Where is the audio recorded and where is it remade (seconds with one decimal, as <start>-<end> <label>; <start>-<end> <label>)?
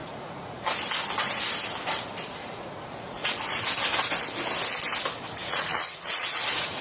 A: 0.0-0.6 remade; 0.6-2.4 recorded; 2.4-3.6 remade; 3.6-5.4 recorded; 5.4-6.8 remade